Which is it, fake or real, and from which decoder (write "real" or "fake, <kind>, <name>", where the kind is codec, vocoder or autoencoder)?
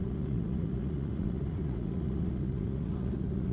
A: fake, vocoder, Vocos